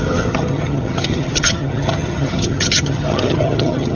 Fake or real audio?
fake